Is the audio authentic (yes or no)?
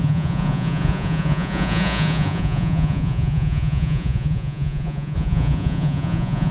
no